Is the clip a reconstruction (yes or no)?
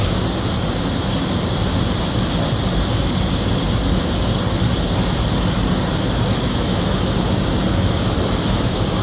no